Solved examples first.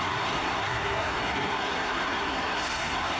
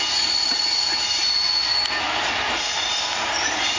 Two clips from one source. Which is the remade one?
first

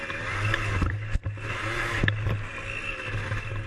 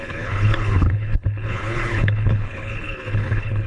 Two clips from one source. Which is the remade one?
second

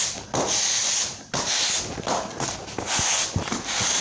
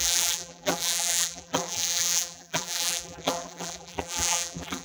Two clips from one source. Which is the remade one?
second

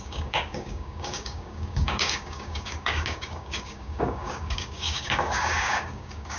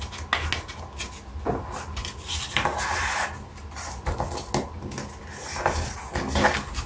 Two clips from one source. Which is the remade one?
first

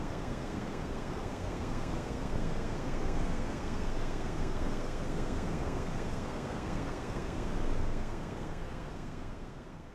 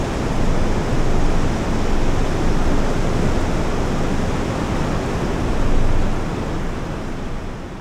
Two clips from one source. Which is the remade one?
first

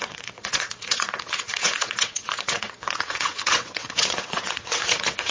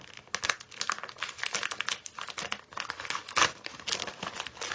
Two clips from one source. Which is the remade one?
first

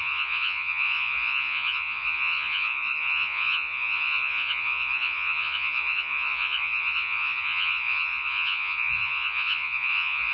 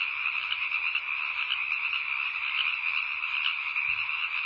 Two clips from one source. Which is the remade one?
first